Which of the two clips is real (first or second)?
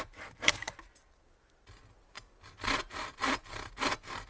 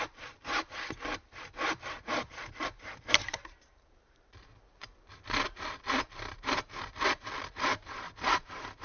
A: first